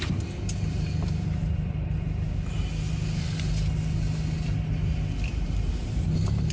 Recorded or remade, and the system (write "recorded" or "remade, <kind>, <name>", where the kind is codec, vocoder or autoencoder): recorded